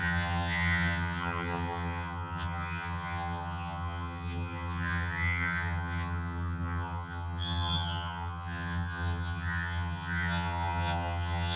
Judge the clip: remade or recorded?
remade